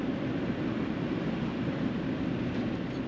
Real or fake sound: real